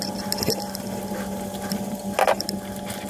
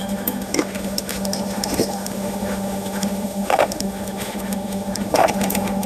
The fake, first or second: second